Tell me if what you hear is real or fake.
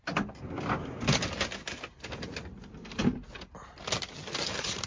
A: real